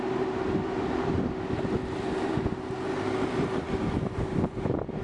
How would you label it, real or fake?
real